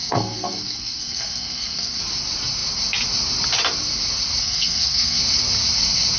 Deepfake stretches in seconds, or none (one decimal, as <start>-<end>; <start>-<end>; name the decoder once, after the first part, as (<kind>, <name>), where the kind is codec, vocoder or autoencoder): 0.0-2.0 (codec, SNAC); 4.4-5.2